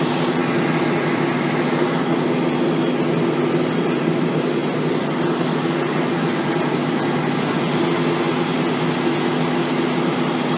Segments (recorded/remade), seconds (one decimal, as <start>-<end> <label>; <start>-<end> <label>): 0.0-10.6 recorded